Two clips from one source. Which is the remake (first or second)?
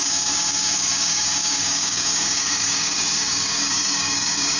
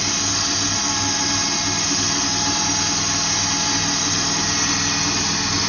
first